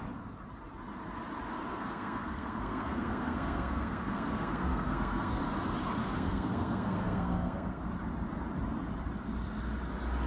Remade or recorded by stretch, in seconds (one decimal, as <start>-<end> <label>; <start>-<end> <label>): 0.0-1.7 recorded; 1.7-5.4 remade; 5.4-6.0 recorded; 6.0-7.9 remade; 7.9-10.3 recorded